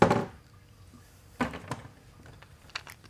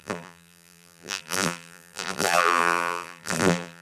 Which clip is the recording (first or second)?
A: first